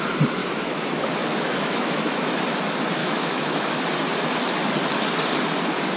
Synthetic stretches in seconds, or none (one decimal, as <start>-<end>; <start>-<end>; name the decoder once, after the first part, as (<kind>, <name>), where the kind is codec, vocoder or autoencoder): 0.4-2.4 (autoencoder, DAC-VAE); 3.0-3.8

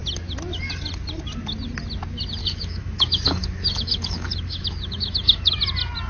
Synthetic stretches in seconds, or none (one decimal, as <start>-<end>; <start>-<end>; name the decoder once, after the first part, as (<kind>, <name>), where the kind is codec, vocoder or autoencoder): 2.4-5.6 (autoencoder, DAC-VAE)

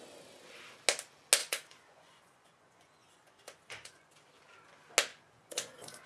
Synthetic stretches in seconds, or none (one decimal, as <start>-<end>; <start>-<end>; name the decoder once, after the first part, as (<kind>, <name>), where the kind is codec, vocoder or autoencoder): 1.4-4.1 (vocoder, Vocos); 5.1-6.1

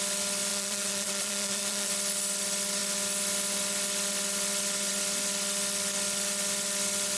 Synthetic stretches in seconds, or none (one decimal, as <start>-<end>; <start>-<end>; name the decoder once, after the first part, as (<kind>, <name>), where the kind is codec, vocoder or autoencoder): 0.5-1.9 (vocoder, Vocos)